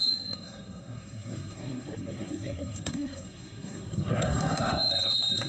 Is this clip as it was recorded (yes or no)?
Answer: no